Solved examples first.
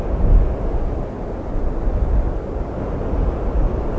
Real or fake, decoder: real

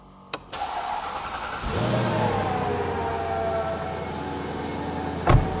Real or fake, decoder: real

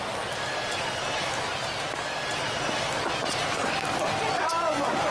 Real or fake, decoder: real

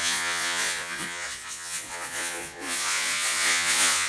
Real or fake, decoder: fake, vocoder, Vocos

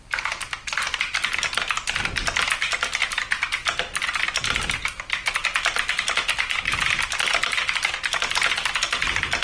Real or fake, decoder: real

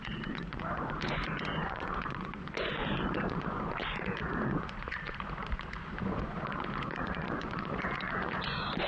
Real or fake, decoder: fake, vocoder, Vocos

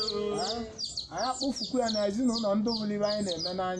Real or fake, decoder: real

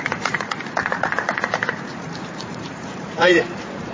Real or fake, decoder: fake, vocoder, Vocos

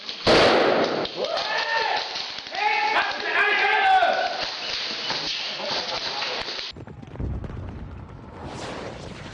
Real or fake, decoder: real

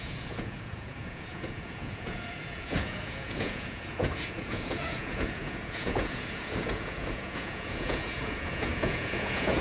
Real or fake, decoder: fake, vocoder, Vocos